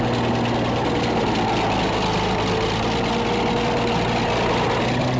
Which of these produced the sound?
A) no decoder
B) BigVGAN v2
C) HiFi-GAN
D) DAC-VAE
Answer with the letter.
A